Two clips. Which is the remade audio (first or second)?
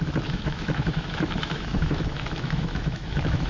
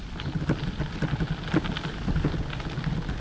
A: first